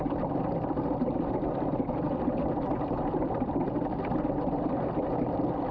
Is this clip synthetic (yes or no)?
no